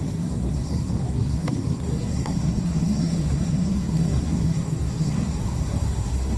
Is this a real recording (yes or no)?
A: no